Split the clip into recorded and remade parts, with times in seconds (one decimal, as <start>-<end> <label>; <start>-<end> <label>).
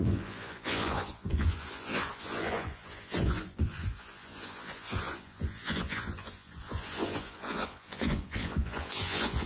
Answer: 0.0-9.5 remade